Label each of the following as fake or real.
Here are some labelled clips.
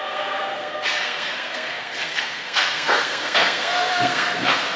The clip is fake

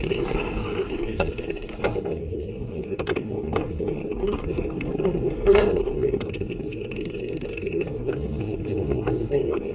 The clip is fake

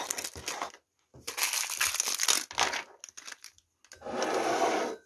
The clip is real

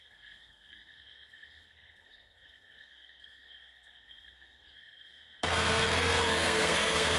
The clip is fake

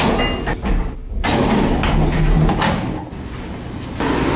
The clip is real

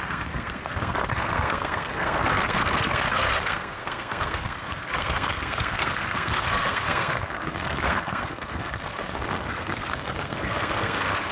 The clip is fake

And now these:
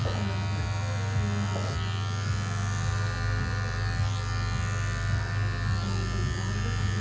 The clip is real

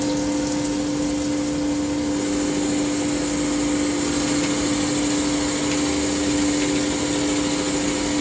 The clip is real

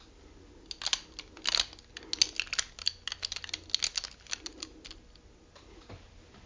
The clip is real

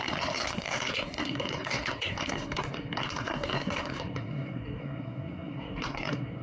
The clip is fake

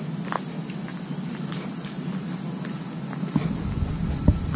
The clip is real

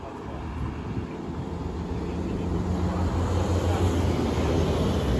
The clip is real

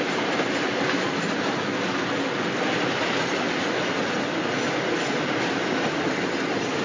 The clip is real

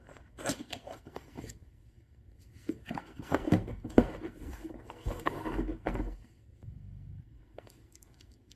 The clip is fake